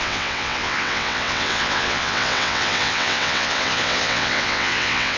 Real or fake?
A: fake